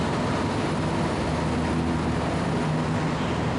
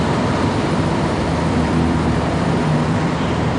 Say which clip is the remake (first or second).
second